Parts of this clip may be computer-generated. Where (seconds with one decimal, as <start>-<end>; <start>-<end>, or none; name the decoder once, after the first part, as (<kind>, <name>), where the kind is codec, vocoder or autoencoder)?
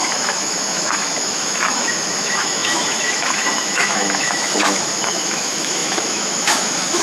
0.0-7.0 (autoencoder, DAC-VAE)